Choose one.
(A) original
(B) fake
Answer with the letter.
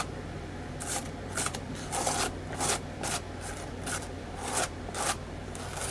B